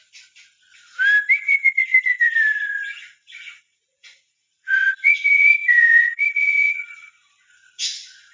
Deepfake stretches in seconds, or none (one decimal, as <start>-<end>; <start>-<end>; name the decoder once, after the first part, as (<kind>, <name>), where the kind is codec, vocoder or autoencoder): 1.4-8.3 (vocoder, Vocos)

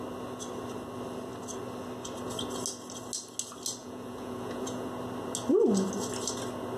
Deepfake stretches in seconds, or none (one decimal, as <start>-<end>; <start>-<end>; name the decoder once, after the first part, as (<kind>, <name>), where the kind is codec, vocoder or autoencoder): 3.8-4.9 (vocoder, Vocos)

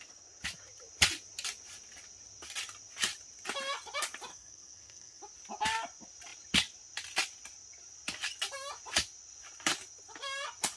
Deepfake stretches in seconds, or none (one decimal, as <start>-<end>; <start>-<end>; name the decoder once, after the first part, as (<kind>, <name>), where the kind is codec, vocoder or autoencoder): 4.3-5.2 (codec, SNAC)

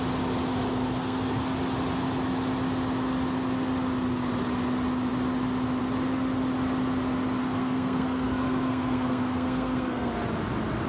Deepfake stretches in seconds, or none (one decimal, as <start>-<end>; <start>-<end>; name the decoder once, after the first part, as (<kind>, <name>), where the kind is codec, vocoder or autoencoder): 0.7-1.3 (codec, SNAC); 7.4-10.1

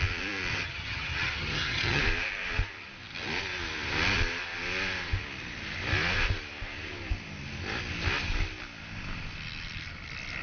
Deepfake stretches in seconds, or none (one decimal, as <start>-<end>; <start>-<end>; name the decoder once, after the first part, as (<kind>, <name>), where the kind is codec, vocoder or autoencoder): 0.5-2.0 (vocoder, HiFi-GAN)